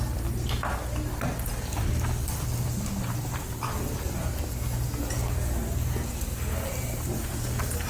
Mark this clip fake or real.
real